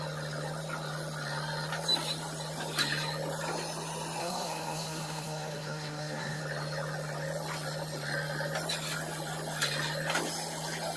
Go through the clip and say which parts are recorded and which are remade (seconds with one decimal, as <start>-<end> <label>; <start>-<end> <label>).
0.0-4.2 recorded; 4.2-6.4 remade; 6.4-11.0 recorded

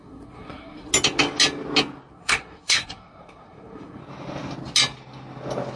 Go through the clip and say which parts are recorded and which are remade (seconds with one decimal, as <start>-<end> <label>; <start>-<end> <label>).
0.0-0.9 remade; 0.9-2.1 recorded; 2.1-4.0 remade; 4.0-5.8 recorded

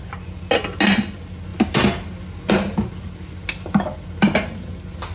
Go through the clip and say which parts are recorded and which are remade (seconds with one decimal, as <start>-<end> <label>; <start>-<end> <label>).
0.0-5.1 recorded

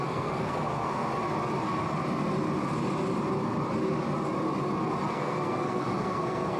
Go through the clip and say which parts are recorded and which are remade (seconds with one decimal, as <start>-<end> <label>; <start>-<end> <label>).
0.0-1.1 remade; 1.1-5.1 recorded; 5.1-6.6 remade

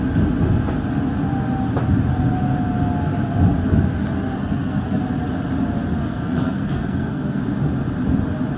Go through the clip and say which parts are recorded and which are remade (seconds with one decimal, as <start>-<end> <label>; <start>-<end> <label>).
0.0-4.4 recorded; 4.4-5.0 remade; 5.0-6.0 recorded; 6.0-7.4 remade; 7.4-8.6 recorded

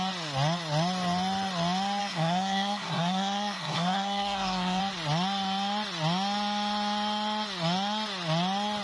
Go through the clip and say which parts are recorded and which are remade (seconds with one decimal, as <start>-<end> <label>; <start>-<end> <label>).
0.0-2.0 recorded; 2.0-4.8 remade; 4.8-8.8 recorded

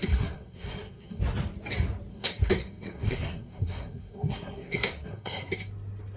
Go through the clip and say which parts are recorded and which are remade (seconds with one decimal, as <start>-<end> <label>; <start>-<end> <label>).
0.0-1.2 remade; 1.2-2.1 recorded; 2.1-5.5 remade; 5.5-6.2 recorded